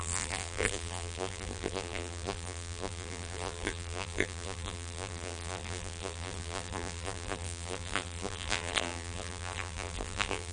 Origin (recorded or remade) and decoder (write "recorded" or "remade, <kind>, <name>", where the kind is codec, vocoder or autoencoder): remade, vocoder, BigVGAN v2